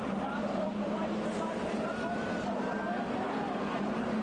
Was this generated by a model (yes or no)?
yes